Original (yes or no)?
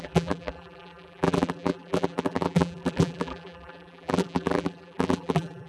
no